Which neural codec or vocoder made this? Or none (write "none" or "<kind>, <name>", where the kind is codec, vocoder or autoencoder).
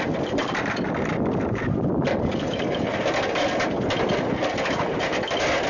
none